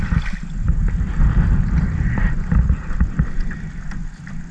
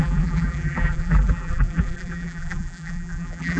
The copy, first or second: second